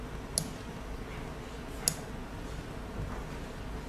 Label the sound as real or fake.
real